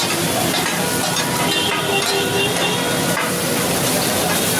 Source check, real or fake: real